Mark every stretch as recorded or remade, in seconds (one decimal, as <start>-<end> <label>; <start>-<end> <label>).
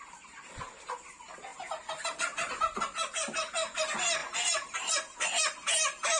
0.0-6.2 recorded